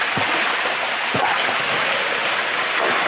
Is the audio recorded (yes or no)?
yes